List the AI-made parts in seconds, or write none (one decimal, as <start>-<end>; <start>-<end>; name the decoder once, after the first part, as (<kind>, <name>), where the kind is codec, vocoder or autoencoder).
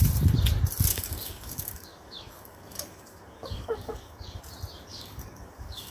0.9-4.4 (codec, DAC); 4.9-5.9